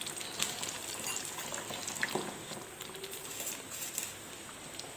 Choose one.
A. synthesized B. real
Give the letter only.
B